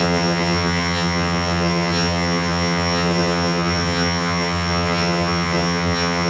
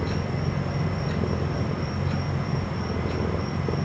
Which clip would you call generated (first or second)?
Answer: first